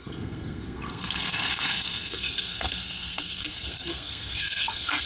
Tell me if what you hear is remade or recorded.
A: remade